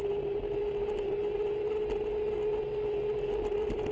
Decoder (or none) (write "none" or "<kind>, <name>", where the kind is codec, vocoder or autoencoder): none